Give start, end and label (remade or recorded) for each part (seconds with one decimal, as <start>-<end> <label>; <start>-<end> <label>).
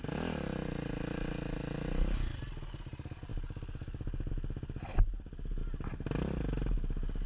0.0-7.3 recorded